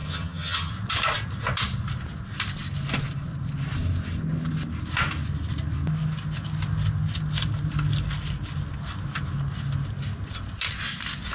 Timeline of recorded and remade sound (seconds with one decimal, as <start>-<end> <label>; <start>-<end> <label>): 0.0-0.7 remade; 0.7-11.3 recorded